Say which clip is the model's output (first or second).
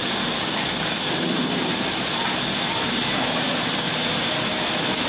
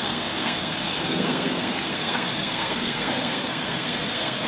second